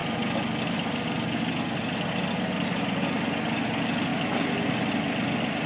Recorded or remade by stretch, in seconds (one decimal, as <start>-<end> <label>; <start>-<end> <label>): 0.0-5.7 recorded